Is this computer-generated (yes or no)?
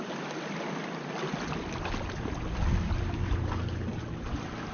no